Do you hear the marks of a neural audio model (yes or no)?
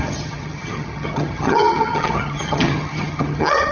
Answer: yes